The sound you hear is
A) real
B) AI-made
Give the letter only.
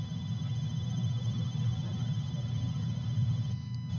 A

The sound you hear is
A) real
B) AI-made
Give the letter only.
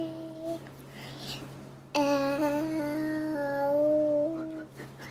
A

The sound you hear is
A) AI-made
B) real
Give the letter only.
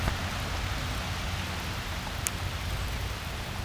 B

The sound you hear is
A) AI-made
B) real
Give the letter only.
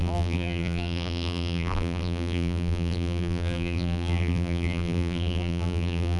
A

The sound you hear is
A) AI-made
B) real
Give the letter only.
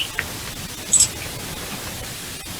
B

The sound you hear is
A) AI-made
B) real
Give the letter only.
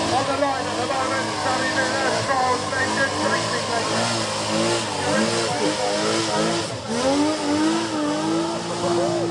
B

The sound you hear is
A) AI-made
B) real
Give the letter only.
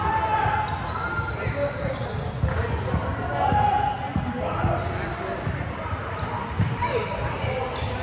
B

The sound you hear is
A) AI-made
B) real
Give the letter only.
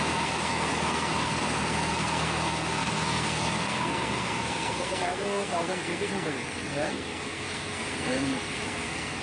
A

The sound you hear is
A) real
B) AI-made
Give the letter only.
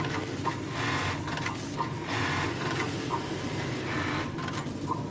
A